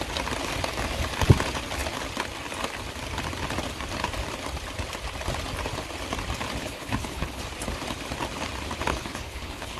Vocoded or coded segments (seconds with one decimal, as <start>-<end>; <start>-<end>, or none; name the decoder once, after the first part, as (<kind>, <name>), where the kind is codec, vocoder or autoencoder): 6.6-7.4 (codec, HILCodec); 8.9-9.8